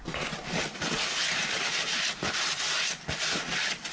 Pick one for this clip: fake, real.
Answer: real